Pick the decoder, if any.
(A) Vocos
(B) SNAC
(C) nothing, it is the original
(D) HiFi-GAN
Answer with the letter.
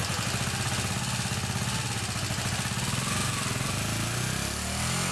C